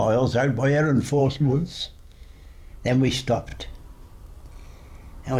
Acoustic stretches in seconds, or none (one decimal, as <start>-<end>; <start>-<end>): 0.0-1.2; 2.7-5.4